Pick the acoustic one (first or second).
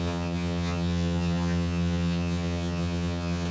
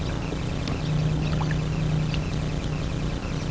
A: second